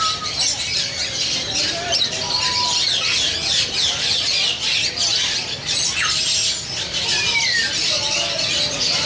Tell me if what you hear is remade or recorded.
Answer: recorded